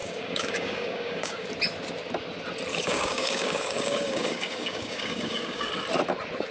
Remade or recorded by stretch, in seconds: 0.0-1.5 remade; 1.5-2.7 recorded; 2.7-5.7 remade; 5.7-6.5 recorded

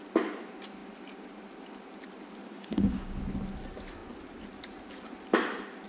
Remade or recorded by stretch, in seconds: 0.0-2.4 recorded; 2.4-3.2 remade; 3.2-5.9 recorded

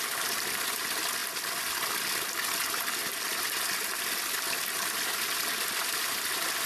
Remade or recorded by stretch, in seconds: 0.0-6.7 recorded

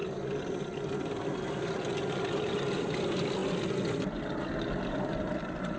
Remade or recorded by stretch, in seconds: 0.0-5.8 recorded

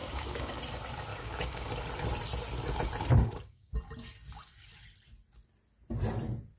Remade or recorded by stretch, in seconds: 0.0-0.6 remade; 0.6-1.1 recorded; 1.1-1.7 remade; 1.7-3.2 recorded; 3.2-3.7 remade; 3.7-6.6 recorded

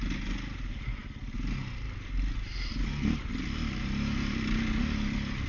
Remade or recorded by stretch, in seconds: 0.0-5.5 recorded

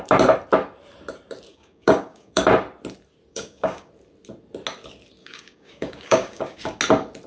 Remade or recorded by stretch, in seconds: 0.0-1.5 recorded; 1.5-2.4 remade; 2.4-3.3 recorded; 3.3-3.9 remade; 3.9-5.2 recorded; 5.2-6.8 remade; 6.8-7.3 recorded

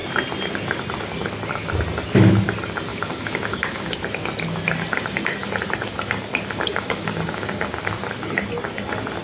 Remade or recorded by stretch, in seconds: 0.0-2.9 recorded; 2.9-4.0 remade; 4.0-6.7 recorded; 6.7-8.0 remade; 8.0-9.2 recorded